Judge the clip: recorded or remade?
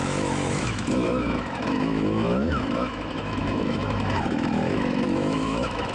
remade